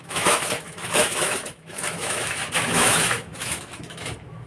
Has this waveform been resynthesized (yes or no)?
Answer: yes